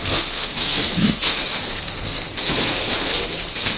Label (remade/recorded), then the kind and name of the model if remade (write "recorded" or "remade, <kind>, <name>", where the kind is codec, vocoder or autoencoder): remade, codec, SNAC